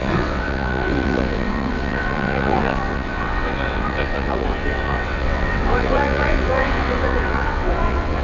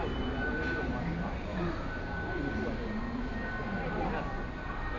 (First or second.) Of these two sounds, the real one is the second